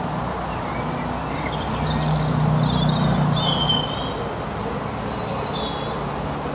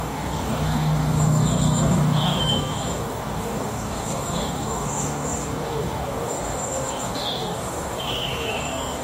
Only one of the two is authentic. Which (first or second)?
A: first